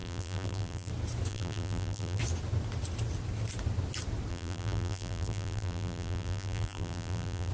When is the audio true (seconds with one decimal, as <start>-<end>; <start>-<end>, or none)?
0.9-1.3; 2.2-4.3